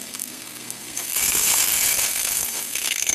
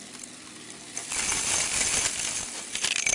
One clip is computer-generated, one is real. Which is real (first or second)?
second